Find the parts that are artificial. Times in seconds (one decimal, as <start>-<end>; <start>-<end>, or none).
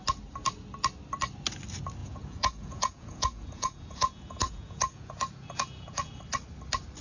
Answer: 2.0-6.2